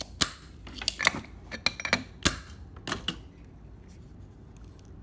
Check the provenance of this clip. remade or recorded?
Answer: recorded